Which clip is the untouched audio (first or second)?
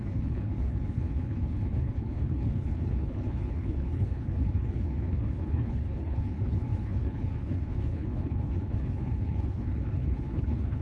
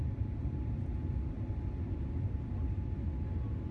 second